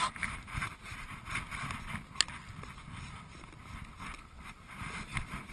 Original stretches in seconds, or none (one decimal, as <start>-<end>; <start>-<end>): 0.9-4.2